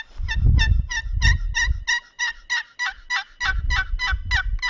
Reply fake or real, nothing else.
real